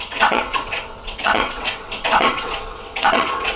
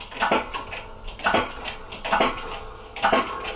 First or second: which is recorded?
second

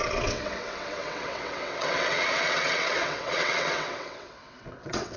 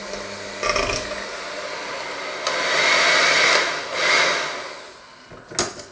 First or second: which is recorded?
second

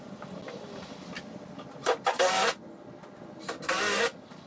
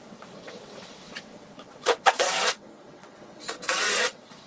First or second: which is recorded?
first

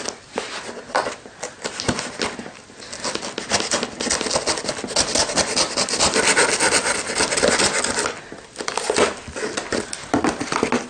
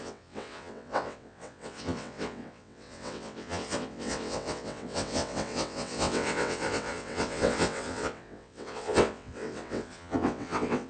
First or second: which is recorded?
first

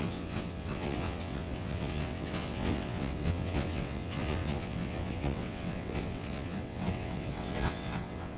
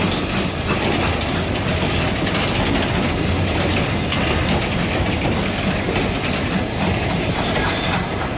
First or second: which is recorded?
second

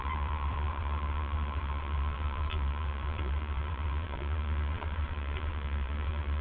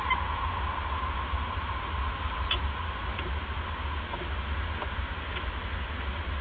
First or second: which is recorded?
second